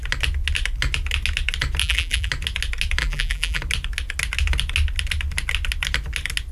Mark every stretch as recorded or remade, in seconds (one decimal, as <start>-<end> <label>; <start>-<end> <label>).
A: 0.0-1.8 recorded; 1.8-2.3 remade; 2.3-3.0 recorded; 3.0-3.6 remade; 3.6-6.5 recorded